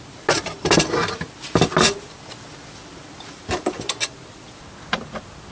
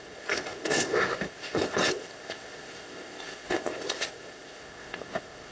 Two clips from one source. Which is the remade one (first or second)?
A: second